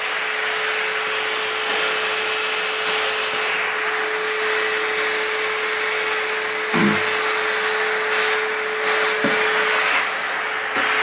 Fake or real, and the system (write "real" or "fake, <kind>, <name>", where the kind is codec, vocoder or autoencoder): real